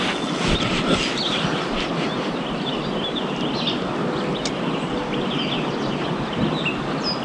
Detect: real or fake real